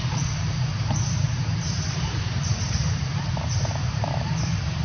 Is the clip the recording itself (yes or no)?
no